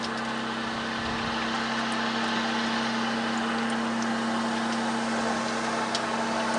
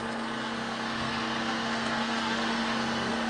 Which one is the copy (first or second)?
second